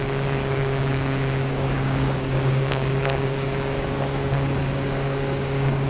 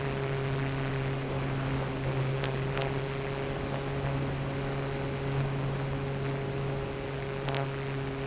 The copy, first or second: first